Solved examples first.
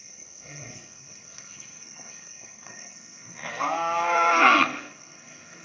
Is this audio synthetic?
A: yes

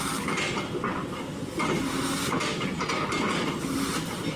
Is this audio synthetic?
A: no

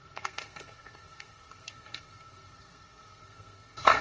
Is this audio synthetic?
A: yes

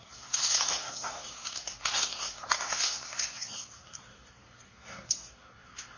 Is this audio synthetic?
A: yes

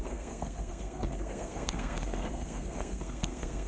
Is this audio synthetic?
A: yes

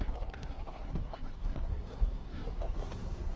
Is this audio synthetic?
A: yes